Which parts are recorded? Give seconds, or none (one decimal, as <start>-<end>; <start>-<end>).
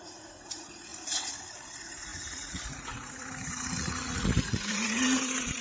none